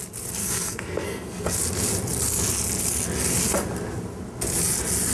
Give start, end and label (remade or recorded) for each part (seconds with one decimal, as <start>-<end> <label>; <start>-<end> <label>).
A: 0.0-0.4 recorded; 0.4-1.6 remade; 1.6-5.1 recorded